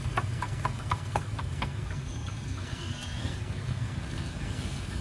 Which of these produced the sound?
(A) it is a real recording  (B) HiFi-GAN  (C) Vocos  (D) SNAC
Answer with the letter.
D